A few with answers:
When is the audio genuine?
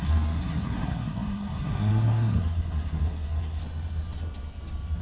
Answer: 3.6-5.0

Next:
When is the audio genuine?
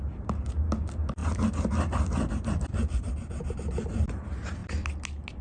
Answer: 0.0-5.4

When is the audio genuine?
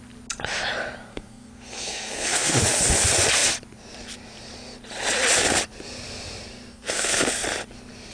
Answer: 0.0-1.1; 2.5-6.7; 7.3-8.1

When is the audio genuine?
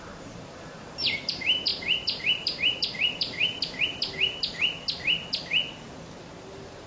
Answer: 3.5-6.2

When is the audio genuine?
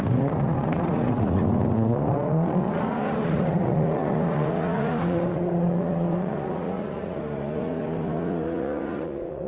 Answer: none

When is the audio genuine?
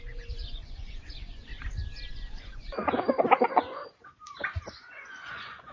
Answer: 1.5-2.1; 2.8-3.4; 3.8-4.7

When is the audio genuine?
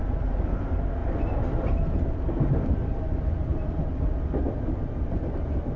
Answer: 0.0-1.0; 1.7-3.4; 3.9-4.4